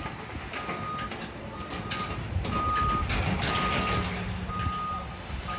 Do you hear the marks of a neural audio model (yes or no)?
no